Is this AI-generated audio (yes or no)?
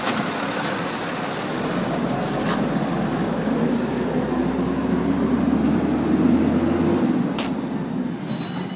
no